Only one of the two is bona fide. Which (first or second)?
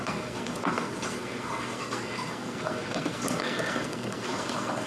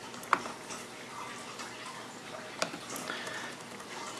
second